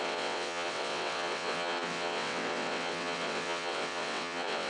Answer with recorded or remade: remade